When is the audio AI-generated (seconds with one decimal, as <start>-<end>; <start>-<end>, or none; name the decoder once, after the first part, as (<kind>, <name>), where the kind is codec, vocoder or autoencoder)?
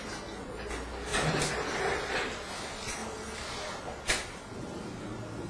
none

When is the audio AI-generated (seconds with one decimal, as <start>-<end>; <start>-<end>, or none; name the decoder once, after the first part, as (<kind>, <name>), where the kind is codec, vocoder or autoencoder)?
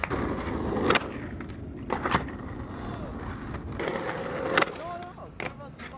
none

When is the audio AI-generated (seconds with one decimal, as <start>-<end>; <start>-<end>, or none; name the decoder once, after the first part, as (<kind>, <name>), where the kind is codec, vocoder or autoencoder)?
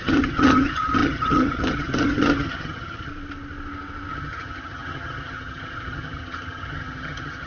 0.0-3.1 (vocoder, HiFi-GAN); 4.1-7.5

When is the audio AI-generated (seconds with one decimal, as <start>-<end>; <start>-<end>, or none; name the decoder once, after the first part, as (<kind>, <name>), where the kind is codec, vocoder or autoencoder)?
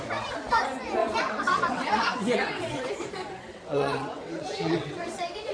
1.0-2.9 (vocoder, WaveNeXt); 3.5-5.5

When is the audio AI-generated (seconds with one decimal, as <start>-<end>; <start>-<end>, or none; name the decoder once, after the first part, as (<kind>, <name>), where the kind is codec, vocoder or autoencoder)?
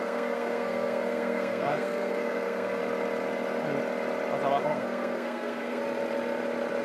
0.0-2.8 (codec, SNAC); 4.6-5.8